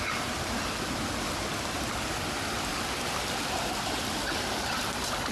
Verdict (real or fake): real